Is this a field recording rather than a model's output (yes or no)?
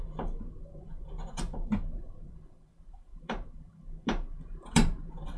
no